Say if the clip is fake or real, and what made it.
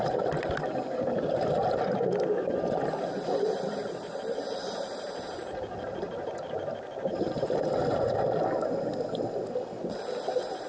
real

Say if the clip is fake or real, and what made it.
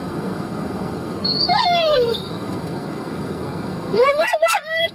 fake, codec, SNAC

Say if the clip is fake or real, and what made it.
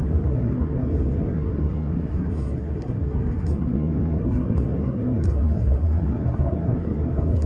fake, codec, SNAC